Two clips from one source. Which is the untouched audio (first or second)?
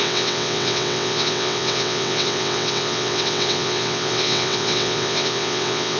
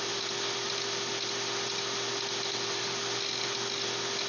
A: second